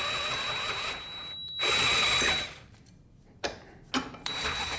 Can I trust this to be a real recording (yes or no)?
yes